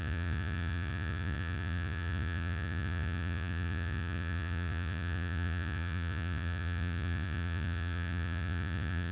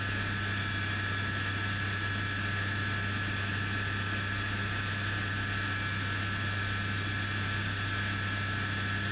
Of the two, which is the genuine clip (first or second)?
second